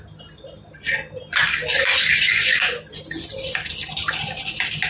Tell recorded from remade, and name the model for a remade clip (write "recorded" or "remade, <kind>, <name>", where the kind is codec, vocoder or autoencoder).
recorded